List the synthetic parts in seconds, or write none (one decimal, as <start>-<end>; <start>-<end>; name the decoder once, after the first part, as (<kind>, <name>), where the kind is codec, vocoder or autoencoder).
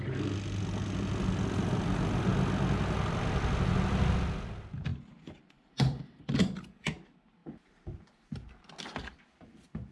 4.9-6.3 (vocoder, BigVGAN v2)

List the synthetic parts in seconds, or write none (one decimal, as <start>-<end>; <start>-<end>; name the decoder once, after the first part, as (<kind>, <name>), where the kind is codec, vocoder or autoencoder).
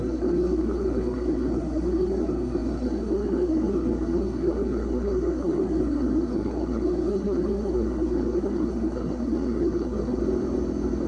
0.0-10.2 (codec, SNAC)